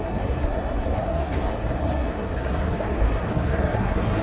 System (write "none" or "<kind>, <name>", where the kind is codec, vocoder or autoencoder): codec, SNAC